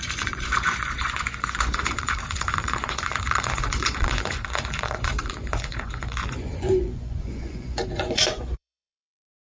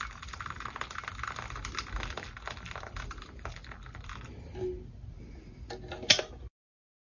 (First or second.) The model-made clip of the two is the first